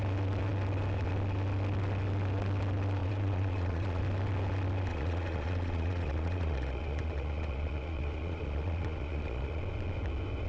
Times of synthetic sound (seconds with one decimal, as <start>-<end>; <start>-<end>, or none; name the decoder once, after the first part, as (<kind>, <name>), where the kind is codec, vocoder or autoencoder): 3.0-4.0 (vocoder, Vocos); 4.9-9.6